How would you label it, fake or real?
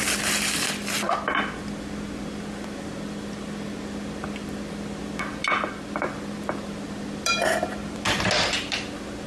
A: real